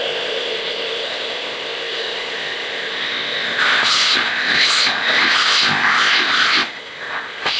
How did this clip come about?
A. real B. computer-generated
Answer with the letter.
B